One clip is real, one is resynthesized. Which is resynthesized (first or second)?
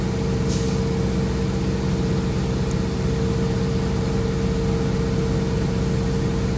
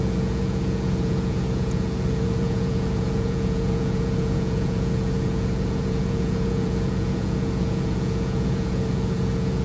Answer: second